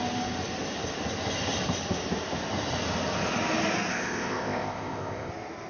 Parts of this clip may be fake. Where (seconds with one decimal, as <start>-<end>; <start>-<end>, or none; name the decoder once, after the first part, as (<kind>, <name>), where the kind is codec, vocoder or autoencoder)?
3.9-5.3 (codec, ZipCodec)